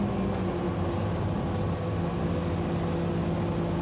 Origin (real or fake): real